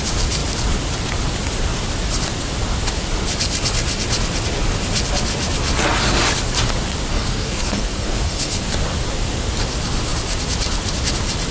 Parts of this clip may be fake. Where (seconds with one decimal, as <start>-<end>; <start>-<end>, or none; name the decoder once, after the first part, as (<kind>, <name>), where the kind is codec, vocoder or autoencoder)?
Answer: 7.1-8.6 (codec, SNAC)